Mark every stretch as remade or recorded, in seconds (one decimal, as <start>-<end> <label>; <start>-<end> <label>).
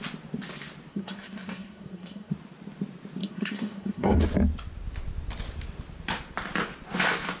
0.0-0.9 recorded; 0.9-2.3 remade; 2.3-3.2 recorded; 3.2-4.2 remade; 4.2-7.4 recorded